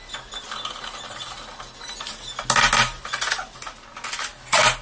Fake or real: real